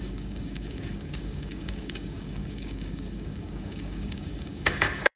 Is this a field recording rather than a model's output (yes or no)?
no